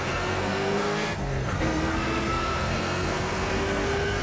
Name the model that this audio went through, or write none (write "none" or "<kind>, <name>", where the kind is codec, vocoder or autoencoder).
codec, SNAC